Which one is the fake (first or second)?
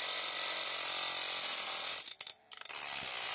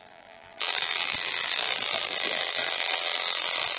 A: second